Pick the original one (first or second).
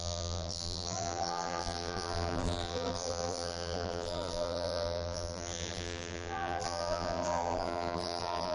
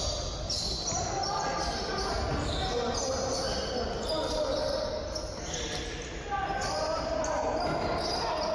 second